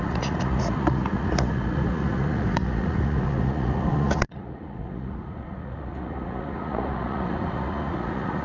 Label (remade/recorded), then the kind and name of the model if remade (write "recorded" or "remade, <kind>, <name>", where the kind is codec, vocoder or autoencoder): remade, vocoder, Vocos